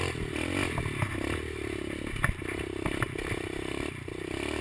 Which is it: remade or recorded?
recorded